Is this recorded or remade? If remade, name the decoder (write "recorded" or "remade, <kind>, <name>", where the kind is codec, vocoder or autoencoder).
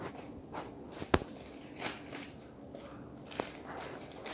recorded